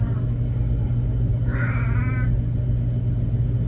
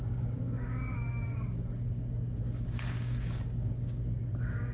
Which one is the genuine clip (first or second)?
first